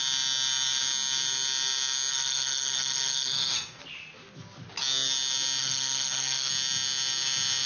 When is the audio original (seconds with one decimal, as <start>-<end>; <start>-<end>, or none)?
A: 0.0-2.1; 3.8-5.6; 6.5-7.7